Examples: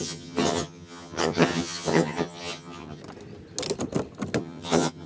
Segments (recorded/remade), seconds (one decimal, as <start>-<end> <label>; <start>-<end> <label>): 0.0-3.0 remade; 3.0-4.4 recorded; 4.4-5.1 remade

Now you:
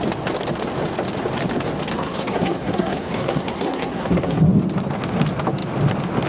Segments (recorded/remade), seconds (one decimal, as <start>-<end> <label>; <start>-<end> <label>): 0.0-1.9 recorded; 1.9-4.5 remade; 4.5-6.3 recorded

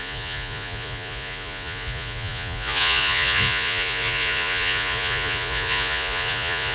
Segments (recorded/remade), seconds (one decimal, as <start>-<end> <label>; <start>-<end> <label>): 0.0-6.7 remade

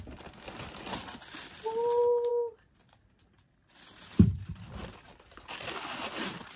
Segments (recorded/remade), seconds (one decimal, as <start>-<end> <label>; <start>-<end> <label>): 0.0-6.6 recorded

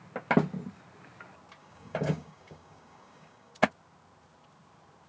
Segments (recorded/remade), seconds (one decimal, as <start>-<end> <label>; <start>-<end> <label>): 0.0-1.6 recorded; 1.6-3.5 remade; 3.5-5.1 recorded